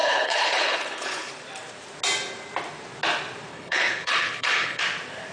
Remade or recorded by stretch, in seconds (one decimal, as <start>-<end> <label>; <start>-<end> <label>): 0.0-1.3 remade; 1.3-3.5 recorded; 3.5-4.8 remade; 4.8-5.3 recorded